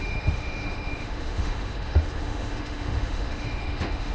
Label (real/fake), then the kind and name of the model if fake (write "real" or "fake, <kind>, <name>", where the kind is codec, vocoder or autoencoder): fake, autoencoder, DAC-VAE